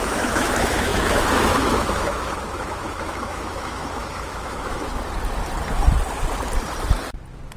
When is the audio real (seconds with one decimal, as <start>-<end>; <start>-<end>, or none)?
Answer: 4.9-7.6

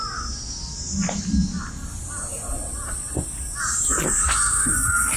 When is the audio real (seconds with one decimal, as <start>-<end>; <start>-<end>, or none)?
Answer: 0.0-4.2

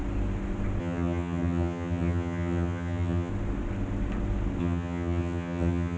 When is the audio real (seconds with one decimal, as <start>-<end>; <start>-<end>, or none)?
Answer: 0.0-0.8; 3.3-4.6

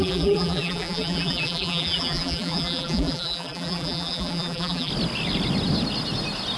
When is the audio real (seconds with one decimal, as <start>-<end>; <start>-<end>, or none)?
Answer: 4.9-6.6

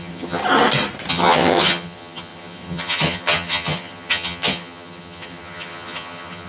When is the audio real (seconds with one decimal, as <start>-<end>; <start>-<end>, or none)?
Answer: 0.4-1.1